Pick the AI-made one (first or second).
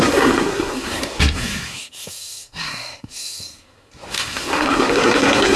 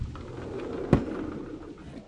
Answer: first